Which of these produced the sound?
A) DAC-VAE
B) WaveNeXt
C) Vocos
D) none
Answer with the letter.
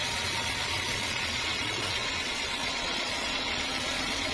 C